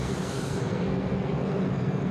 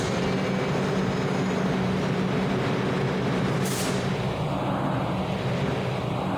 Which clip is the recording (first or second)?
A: second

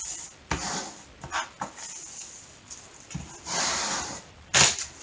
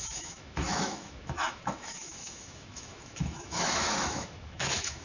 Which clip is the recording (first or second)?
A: first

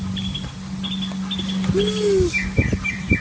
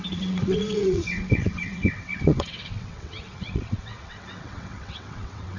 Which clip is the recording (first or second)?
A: first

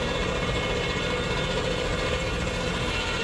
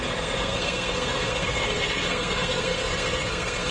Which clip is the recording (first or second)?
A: first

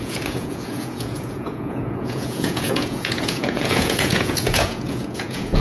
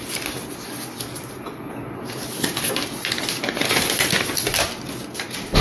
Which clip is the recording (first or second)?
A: second